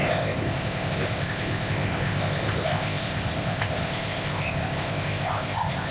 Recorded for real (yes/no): no